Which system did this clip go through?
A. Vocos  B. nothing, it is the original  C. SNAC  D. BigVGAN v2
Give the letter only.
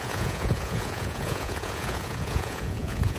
A